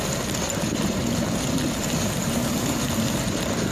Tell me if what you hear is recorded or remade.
recorded